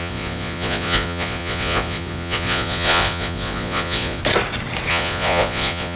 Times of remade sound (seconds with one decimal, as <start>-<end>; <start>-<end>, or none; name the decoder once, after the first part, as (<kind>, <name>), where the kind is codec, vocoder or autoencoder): 0.0-4.2 (vocoder, Vocos); 4.9-6.0